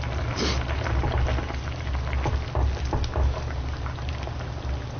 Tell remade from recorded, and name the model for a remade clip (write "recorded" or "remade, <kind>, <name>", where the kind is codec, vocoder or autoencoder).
recorded